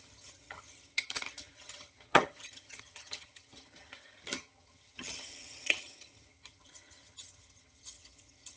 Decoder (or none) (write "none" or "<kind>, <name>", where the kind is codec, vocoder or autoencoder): vocoder, HiFi-GAN